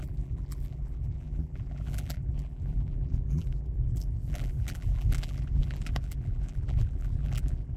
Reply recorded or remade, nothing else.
remade